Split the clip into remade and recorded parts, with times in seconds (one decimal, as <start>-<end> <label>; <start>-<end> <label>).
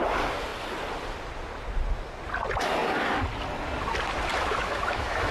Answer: 0.0-4.3 recorded; 4.3-5.3 remade